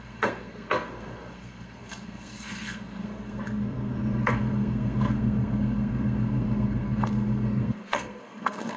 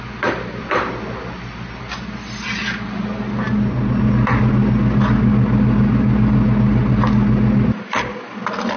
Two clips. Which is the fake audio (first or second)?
first